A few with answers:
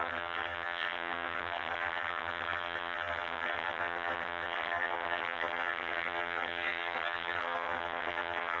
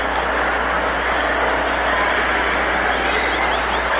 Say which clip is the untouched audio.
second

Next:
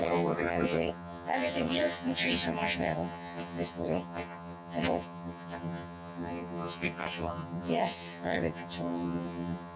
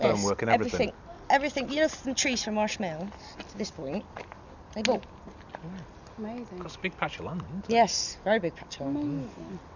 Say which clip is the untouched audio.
second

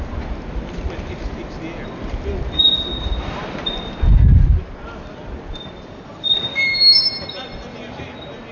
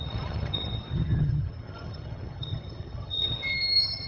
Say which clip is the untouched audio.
first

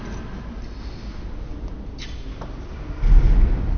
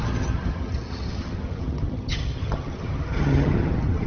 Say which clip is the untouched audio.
first